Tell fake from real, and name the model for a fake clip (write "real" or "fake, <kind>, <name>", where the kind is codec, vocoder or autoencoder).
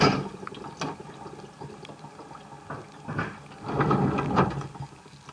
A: real